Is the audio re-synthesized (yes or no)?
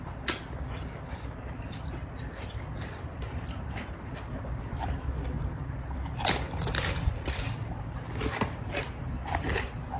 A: no